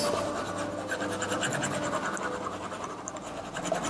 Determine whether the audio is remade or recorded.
recorded